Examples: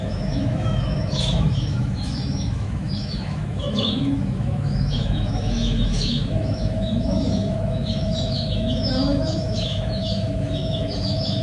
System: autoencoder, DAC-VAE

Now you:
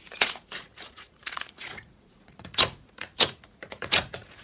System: vocoder, Vocos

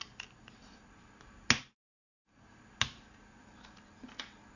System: none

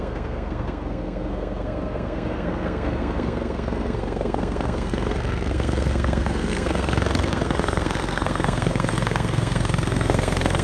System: codec, SNAC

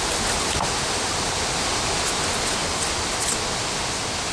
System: none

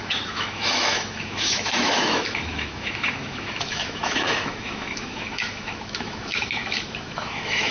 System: autoencoder, DAC-VAE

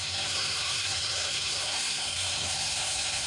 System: codec, SNAC